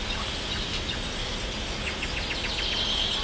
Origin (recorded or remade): recorded